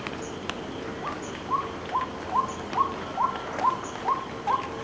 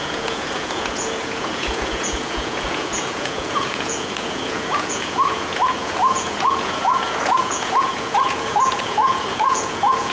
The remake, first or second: second